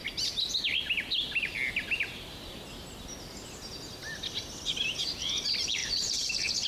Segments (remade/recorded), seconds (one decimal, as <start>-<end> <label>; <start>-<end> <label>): 0.0-5.8 recorded; 5.8-6.3 remade; 6.3-6.7 recorded